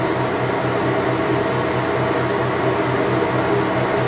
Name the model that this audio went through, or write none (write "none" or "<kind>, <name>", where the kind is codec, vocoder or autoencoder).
none